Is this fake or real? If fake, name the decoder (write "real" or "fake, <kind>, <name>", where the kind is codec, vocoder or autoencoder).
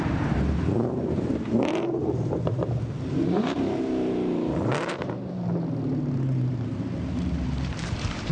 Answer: fake, vocoder, BigVGAN v2